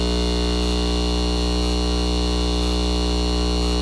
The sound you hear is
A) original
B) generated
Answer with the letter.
A